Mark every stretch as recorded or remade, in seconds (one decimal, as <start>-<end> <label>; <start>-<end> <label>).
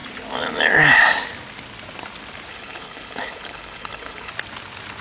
0.0-2.5 recorded; 2.5-4.3 remade; 4.3-5.0 recorded